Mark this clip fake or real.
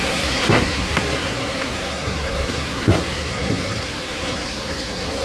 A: fake